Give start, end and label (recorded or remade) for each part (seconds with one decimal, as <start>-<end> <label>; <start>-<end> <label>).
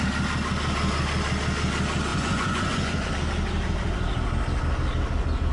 0.0-2.1 recorded; 2.1-3.1 remade; 3.1-5.5 recorded